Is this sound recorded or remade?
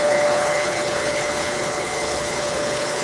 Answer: remade